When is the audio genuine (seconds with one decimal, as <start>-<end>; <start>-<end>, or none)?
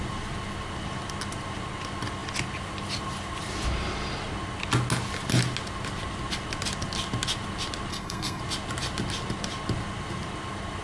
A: 0.0-7.9; 8.4-10.8